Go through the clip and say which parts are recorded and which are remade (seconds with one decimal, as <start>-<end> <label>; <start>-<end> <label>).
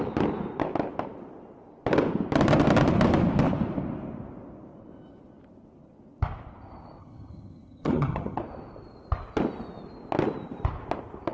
0.0-7.0 recorded; 7.0-8.4 remade; 8.4-11.3 recorded